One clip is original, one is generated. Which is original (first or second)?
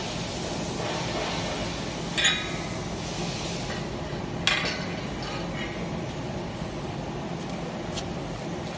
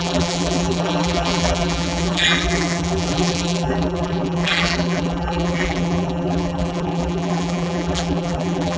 first